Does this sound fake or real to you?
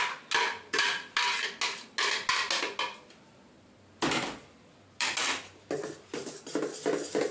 real